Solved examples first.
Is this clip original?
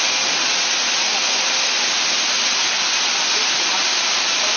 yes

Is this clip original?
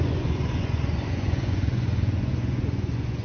no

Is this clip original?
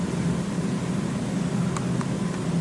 yes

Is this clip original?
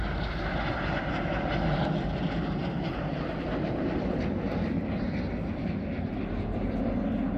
yes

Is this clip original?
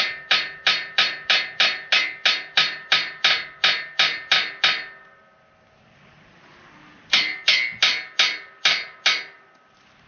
yes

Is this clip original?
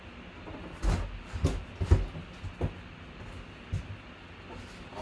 yes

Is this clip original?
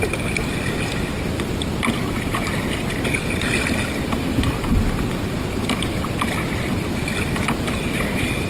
yes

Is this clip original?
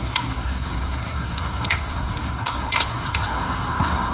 no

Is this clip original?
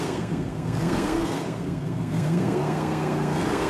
no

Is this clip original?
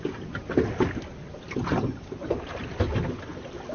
yes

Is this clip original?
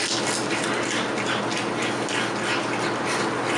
yes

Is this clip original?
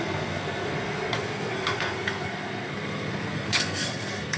no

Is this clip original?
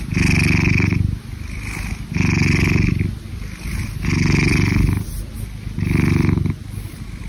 yes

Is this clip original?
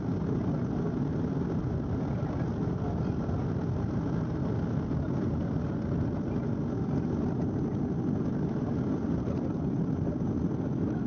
yes